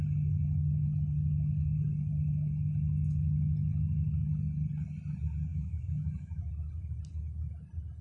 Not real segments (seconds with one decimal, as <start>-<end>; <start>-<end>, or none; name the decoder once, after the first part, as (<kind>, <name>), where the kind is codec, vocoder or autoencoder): 5.5-6.5 (autoencoder, DAC-VAE)

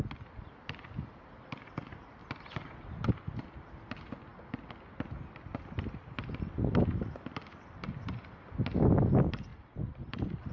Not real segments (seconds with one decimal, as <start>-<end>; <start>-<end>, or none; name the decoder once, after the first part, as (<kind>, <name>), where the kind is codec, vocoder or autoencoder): 9.5-10.5 (vocoder, BigVGAN v2)

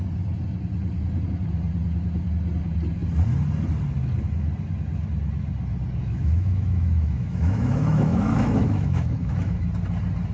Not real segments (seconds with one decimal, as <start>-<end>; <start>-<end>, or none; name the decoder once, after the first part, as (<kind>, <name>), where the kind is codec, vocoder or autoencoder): 6.0-9.7 (autoencoder, DAC-VAE)

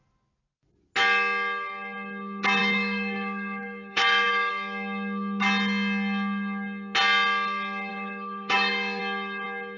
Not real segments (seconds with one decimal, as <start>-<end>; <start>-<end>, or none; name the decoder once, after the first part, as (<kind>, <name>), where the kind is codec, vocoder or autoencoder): 2.6-4.5 (codec, DAC); 7.9-9.0

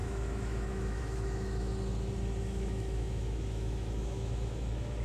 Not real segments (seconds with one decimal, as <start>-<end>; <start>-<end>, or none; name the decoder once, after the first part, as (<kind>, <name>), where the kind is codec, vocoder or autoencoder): 0.0-1.7 (autoencoder, DAC-VAE); 2.4-5.0

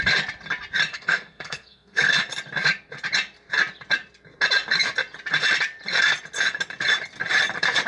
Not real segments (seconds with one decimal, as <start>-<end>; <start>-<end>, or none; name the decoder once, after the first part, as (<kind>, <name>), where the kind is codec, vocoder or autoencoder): 0.9-2.2 (codec, SNAC)

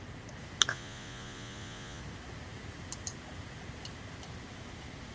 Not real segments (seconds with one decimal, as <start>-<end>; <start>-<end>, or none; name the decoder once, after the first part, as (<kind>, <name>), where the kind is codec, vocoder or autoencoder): 0.7-2.0 (vocoder, Vocos)

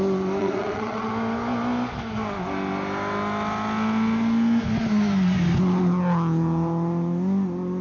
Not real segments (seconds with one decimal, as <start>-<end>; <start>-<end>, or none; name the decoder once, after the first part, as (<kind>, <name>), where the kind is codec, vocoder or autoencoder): 0.4-1.1 (vocoder, Vocos)